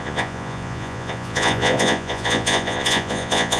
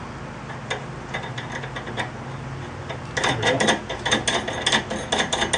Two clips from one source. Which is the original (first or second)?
second